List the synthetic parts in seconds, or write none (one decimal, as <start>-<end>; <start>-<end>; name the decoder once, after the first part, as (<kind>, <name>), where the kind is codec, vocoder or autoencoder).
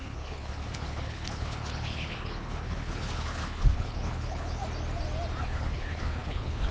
0.0-4.6 (codec, HILCodec); 5.4-6.7